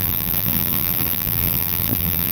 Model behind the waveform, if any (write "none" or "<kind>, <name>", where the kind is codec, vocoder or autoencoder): vocoder, BigVGAN v2